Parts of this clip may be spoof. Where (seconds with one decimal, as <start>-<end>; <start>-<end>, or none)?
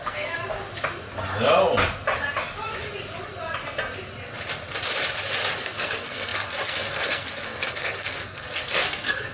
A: 0.0-0.4; 5.6-9.3